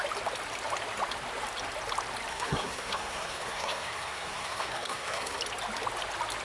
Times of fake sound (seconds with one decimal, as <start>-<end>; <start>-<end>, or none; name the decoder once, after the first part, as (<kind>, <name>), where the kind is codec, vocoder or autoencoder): 2.3-5.4 (codec, SNAC)